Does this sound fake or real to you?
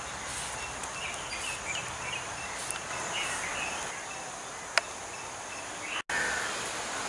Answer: real